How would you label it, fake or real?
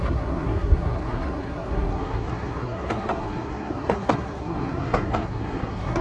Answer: fake